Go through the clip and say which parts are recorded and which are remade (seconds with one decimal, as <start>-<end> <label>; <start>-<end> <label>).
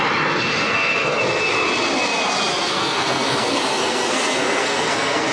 0.0-0.6 recorded; 0.6-1.2 remade; 1.2-2.5 recorded; 2.5-5.3 remade